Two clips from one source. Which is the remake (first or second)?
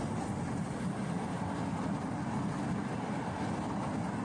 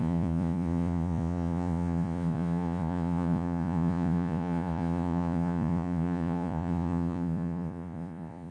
second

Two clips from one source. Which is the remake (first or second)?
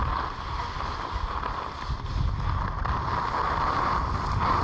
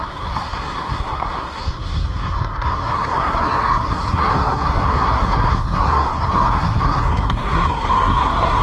second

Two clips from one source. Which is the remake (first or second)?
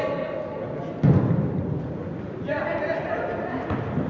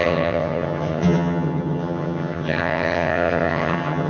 second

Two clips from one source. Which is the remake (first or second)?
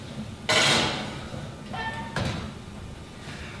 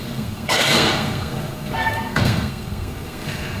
second